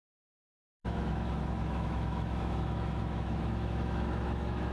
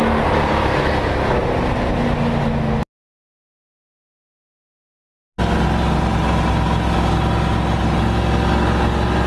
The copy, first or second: first